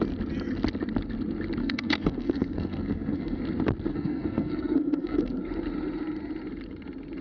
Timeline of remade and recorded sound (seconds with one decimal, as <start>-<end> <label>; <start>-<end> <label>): 0.0-1.6 recorded; 1.6-3.4 remade; 3.4-3.9 recorded; 3.9-5.3 remade; 5.3-7.2 recorded

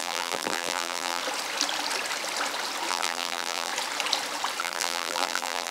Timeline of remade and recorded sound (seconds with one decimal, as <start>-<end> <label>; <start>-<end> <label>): 0.0-1.2 remade; 1.2-2.9 recorded; 2.9-3.7 remade; 3.7-4.6 recorded; 4.6-5.7 remade

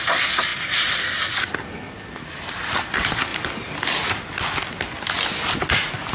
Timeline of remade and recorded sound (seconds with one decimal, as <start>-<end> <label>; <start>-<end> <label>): 0.0-0.5 remade; 0.5-1.3 recorded; 1.3-3.3 remade; 3.3-5.6 recorded; 5.6-6.1 remade

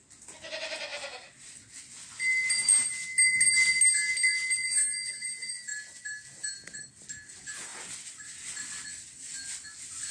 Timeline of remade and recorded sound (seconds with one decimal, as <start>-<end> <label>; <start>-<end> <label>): 0.0-10.1 recorded

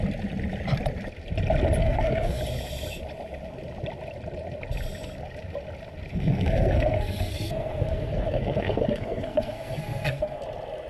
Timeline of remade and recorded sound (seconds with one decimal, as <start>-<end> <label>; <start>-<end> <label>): 0.0-1.8 recorded; 1.8-2.4 remade; 2.4-6.1 recorded; 6.1-10.4 remade; 10.4-10.9 recorded

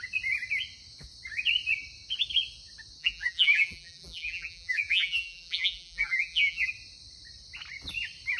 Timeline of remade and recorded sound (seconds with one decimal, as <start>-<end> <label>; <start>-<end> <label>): 0.0-3.0 recorded; 3.0-6.7 remade; 6.7-8.4 recorded

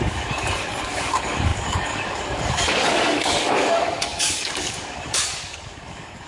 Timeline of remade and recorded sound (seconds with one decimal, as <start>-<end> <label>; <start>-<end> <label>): 0.0-6.3 remade